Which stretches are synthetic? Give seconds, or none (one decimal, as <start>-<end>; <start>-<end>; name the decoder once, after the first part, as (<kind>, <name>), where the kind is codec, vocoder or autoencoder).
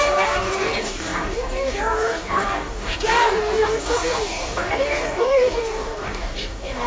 0.0-6.9 (codec, DAC)